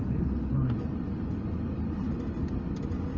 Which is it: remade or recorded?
recorded